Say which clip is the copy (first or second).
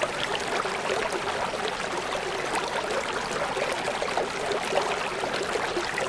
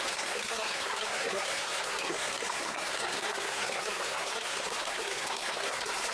second